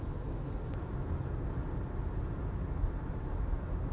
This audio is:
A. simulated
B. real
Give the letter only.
B